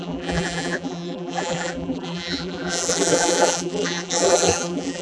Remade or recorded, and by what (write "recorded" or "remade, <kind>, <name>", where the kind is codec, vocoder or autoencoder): remade, vocoder, BigVGAN v2